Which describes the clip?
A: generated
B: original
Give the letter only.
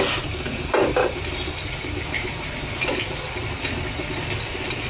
B